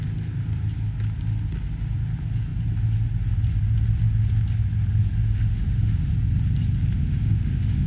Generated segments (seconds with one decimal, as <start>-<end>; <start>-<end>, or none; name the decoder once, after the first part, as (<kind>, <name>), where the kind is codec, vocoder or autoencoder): 5.2-6.1 (autoencoder, DAC-VAE); 7.0-7.9